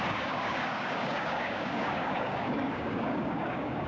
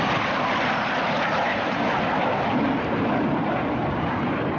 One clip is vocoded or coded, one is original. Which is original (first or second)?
second